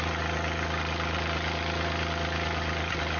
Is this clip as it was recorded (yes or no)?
yes